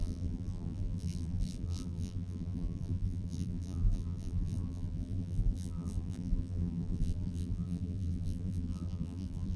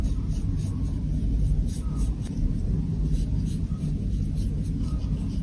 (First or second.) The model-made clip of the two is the first